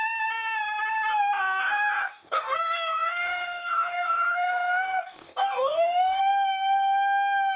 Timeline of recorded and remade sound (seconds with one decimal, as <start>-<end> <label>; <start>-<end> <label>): 0.0-1.6 recorded; 1.6-6.2 remade; 6.2-7.6 recorded